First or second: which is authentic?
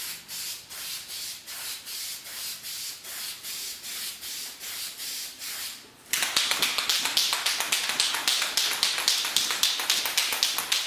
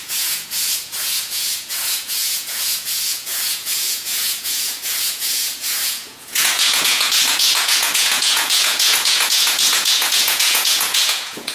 first